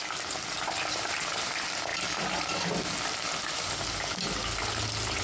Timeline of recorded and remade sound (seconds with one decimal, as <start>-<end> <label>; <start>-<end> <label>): 0.0-5.2 recorded